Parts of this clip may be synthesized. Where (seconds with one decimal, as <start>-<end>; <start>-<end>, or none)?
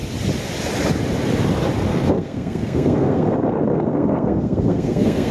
1.9-5.3